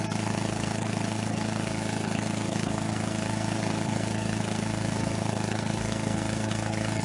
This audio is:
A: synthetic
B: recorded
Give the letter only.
A